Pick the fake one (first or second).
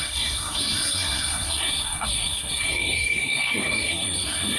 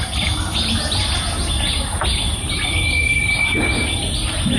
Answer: first